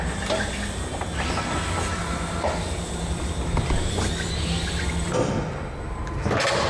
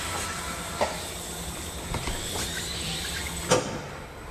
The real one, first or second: first